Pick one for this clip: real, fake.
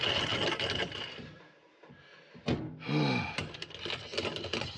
real